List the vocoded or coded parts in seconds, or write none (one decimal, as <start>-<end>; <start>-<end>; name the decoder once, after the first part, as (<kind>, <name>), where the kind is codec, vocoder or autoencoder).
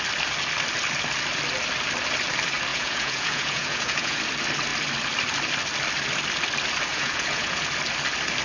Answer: 2.7-4.2 (vocoder, Vocos); 6.9-7.6